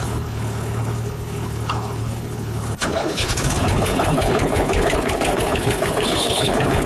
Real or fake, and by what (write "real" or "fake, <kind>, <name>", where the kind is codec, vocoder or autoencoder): fake, codec, HILCodec